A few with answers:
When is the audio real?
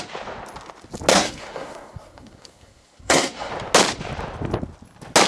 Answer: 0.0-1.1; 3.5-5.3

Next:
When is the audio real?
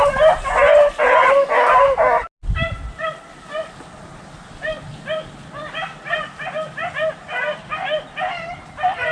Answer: 0.0-5.8; 6.5-7.7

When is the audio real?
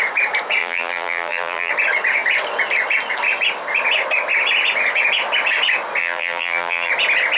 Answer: 0.0-0.6; 1.7-6.0; 6.9-7.4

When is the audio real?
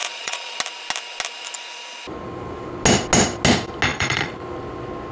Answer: 0.6-3.9; 4.4-5.1